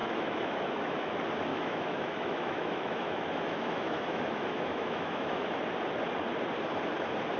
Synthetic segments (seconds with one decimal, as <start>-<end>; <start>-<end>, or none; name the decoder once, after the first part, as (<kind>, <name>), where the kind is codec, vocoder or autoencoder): 0.0-1.1 (autoencoder, DAC-VAE); 1.5-5.6